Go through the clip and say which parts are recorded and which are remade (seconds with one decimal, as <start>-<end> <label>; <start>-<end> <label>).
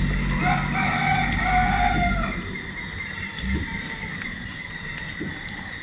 0.0-1.1 recorded; 1.1-4.6 remade; 4.6-5.8 recorded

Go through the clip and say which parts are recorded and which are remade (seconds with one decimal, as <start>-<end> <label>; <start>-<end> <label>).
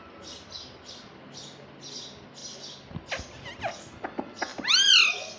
0.0-5.4 recorded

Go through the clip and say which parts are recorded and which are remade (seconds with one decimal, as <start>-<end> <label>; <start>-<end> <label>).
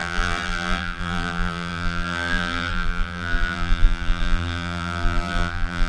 0.0-5.9 remade